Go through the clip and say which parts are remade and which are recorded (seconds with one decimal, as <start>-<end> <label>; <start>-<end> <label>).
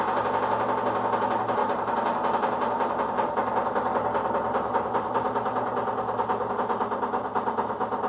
0.0-8.1 recorded